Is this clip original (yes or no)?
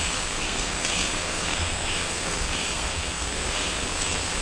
no